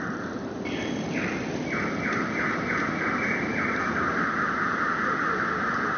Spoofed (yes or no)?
no